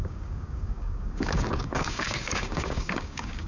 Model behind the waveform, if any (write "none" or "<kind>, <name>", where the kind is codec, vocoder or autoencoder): codec, DAC